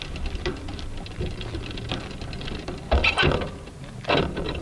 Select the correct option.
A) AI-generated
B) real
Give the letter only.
B